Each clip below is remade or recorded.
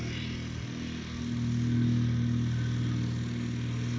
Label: recorded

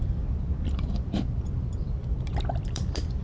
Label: remade